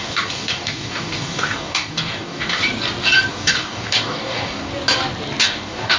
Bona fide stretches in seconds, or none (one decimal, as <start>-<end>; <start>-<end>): 2.6-3.3; 4.7-5.4